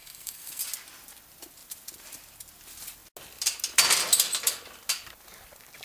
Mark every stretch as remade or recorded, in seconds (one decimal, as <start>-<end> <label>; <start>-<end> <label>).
0.0-0.6 remade; 0.6-5.8 recorded